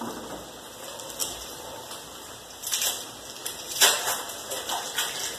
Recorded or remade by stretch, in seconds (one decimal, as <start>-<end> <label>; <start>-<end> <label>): 0.0-1.2 recorded; 1.2-2.9 remade; 2.9-3.4 recorded; 3.4-4.9 remade; 4.9-5.4 recorded